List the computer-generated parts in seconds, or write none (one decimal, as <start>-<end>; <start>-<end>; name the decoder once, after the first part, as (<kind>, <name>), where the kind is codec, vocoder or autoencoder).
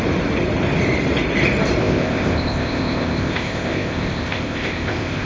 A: 1.8-5.3 (codec, ZipCodec)